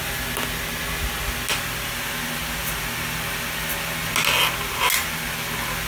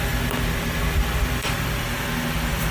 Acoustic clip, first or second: first